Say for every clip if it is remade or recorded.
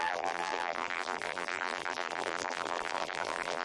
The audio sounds remade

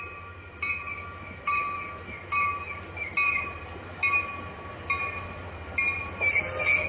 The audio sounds recorded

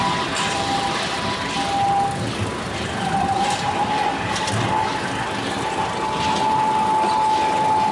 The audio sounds recorded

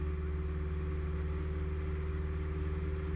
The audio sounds recorded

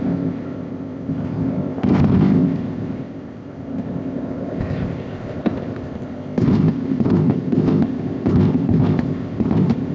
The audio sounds remade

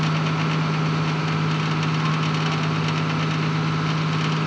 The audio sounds recorded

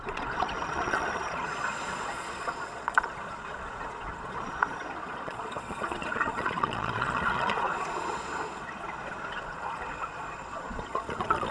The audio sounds remade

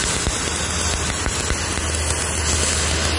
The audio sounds recorded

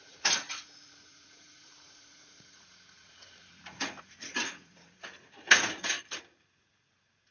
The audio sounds remade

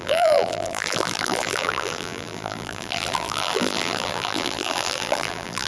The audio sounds remade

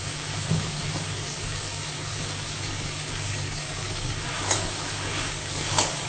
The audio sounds remade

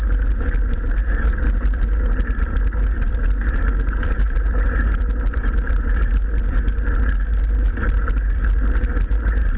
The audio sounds recorded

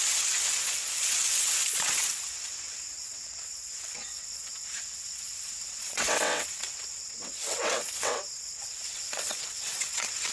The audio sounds remade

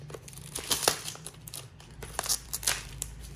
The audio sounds remade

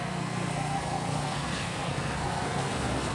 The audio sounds remade